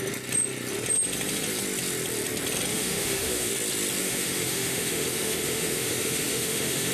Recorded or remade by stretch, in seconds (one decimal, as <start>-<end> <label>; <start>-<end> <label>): 0.0-2.7 recorded; 2.7-3.5 remade; 3.5-4.0 recorded; 4.0-6.9 remade